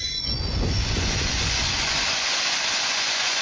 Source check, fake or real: fake